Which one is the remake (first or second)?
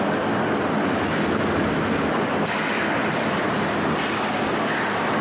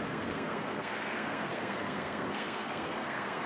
second